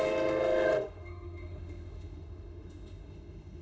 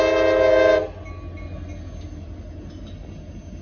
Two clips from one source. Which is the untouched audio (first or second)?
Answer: second